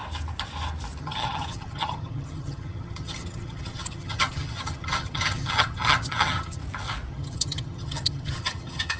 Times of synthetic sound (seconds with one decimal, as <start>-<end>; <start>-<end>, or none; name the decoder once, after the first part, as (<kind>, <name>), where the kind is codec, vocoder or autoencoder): 1.0-6.6 (vocoder, HiFi-GAN); 7.1-9.0